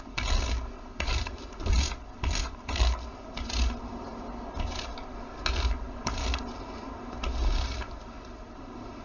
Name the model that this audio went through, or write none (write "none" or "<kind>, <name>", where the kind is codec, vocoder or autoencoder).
none